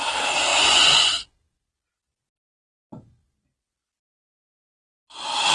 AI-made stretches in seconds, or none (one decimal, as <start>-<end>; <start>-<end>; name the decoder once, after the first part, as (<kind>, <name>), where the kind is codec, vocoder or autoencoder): 0.5-1.7 (vocoder, Vocos)